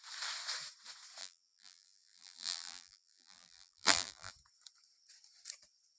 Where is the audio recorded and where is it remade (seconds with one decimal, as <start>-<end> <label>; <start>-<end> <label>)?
0.0-1.2 recorded; 1.2-4.3 remade; 4.3-6.0 recorded